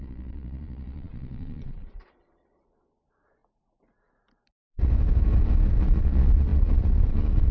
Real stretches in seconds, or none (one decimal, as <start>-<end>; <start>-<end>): 3.4-5.8